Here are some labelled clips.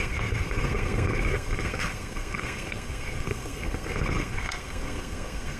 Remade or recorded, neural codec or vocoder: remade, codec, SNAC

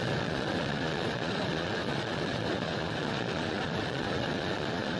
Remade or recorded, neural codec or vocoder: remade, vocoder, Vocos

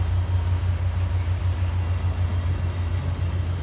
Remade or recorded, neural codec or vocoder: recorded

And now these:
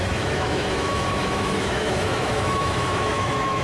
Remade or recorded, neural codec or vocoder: remade, autoencoder, DAC-VAE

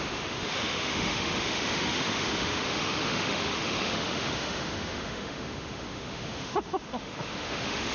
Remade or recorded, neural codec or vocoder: remade, autoencoder, DAC-VAE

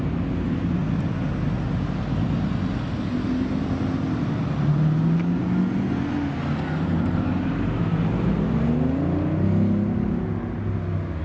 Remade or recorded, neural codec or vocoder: recorded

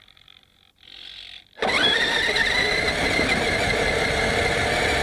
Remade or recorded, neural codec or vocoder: recorded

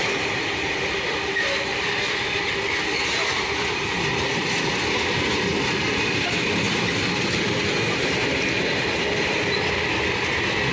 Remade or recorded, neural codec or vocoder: recorded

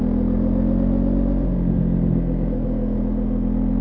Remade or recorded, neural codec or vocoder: recorded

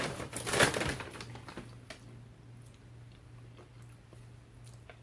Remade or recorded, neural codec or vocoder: recorded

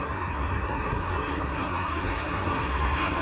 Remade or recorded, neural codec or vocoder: remade, codec, SNAC